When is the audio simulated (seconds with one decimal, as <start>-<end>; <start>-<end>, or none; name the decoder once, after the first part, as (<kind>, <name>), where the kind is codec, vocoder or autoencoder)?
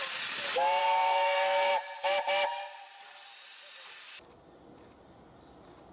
0.8-1.7 (codec, SNAC)